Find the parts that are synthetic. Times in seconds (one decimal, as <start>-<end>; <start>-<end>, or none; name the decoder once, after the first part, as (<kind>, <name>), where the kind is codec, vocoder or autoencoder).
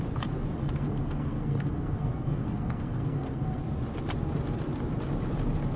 0.5-3.6 (codec, SNAC)